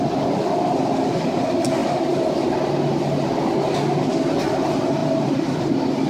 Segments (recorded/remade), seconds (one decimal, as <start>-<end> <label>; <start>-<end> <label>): 0.0-5.0 recorded; 5.0-5.6 remade; 5.6-6.1 recorded